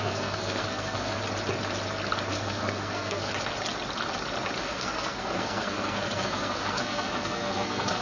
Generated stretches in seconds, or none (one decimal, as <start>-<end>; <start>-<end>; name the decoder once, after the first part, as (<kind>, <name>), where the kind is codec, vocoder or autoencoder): 0.0-1.2 (codec, SNAC); 2.3-3.3; 4.6-8.0